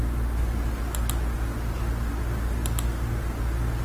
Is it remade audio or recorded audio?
recorded